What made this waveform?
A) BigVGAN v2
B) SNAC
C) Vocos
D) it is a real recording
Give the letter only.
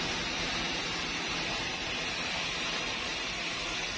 D